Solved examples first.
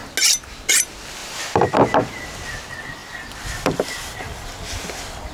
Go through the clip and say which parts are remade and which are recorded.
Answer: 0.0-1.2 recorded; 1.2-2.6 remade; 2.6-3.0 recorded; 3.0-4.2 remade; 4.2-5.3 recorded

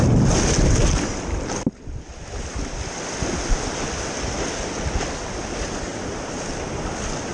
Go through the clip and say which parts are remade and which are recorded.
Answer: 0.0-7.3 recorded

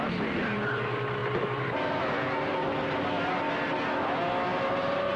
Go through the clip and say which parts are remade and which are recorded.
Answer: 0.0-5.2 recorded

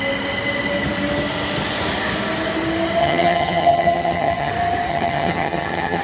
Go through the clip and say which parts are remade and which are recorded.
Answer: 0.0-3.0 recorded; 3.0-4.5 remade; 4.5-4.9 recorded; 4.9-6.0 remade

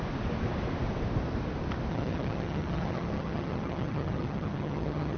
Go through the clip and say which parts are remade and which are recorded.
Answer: 0.0-1.9 recorded; 1.9-5.2 remade